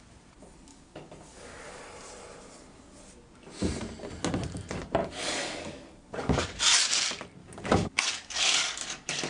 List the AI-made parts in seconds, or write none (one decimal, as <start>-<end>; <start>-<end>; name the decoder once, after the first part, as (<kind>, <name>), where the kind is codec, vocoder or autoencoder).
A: 0.7-1.8 (codec, DAC); 5.0-6.6; 7.4-9.3